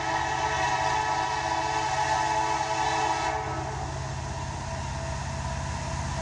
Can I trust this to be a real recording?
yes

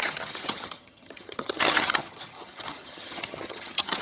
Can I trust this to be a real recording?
no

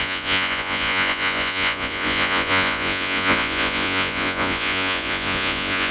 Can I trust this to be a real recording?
no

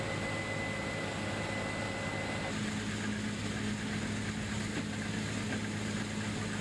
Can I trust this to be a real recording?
yes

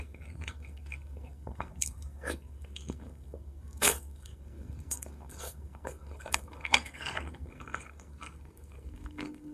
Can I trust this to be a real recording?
no